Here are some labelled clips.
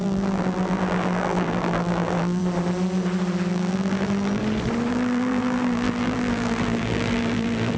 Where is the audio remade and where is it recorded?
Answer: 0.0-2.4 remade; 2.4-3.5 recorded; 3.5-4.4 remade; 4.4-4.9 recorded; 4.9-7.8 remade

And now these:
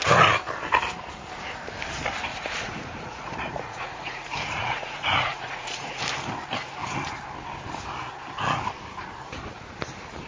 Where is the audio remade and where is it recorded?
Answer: 0.0-2.3 recorded; 2.3-6.0 remade; 6.0-10.3 recorded

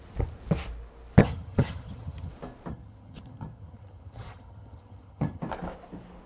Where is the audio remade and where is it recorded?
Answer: 0.0-1.2 recorded; 1.2-2.3 remade; 2.3-2.7 recorded; 2.7-5.4 remade; 5.4-6.3 recorded

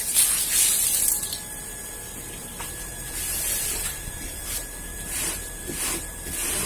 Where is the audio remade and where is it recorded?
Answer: 0.0-6.7 remade

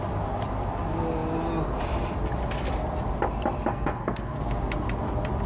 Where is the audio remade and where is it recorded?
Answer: 0.0-3.7 recorded; 3.7-4.4 remade; 4.4-5.5 recorded

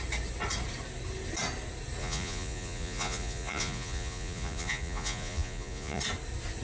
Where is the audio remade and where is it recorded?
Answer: 0.0-2.0 recorded; 2.0-6.0 remade; 6.0-6.6 recorded